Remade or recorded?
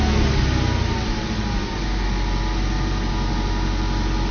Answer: recorded